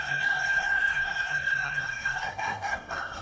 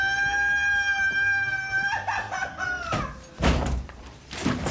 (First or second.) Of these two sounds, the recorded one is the second